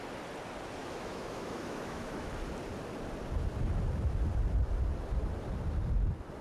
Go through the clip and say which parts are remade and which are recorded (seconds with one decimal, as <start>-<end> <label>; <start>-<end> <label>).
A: 0.0-0.8 recorded; 0.8-2.3 remade; 2.3-6.4 recorded